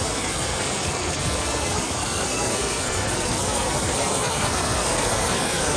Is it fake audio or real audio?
fake